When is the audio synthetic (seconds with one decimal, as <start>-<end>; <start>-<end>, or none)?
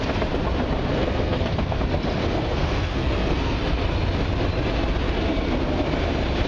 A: 1.0-1.8; 2.2-3.6